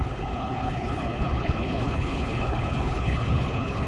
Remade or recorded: remade